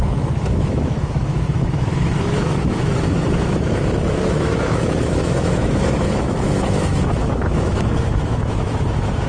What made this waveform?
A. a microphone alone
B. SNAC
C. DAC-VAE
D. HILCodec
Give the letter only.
C